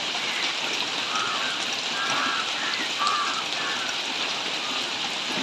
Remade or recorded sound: recorded